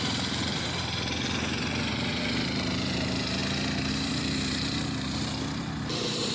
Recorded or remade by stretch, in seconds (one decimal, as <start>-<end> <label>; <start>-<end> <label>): 0.0-3.4 remade; 3.4-3.9 recorded; 3.9-6.3 remade